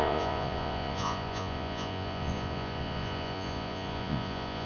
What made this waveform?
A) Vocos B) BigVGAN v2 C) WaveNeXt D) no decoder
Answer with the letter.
A